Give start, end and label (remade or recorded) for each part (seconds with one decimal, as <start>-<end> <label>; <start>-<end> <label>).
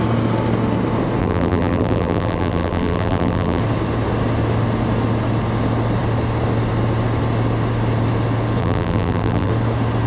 0.0-1.2 recorded; 1.2-3.6 remade; 3.6-8.6 recorded; 8.6-9.5 remade; 9.5-10.1 recorded